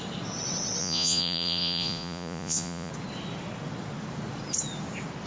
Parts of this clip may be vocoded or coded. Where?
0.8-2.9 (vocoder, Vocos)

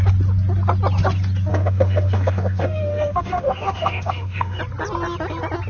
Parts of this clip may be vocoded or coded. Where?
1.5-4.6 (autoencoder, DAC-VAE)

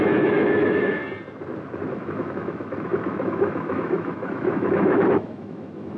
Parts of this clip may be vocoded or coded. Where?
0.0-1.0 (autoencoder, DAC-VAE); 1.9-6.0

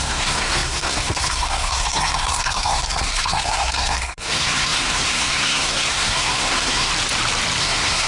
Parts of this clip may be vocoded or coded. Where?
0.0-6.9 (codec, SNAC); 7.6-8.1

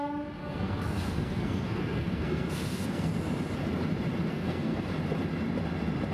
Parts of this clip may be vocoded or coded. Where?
0.4-3.1 (codec, SNAC); 4.3-4.9